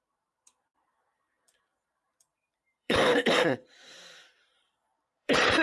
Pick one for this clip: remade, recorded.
remade